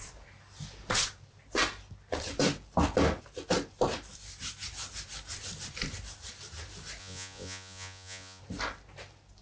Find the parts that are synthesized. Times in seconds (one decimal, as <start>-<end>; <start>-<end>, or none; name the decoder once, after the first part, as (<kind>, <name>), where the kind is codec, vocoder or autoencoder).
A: 7.0-8.4 (vocoder, Vocos)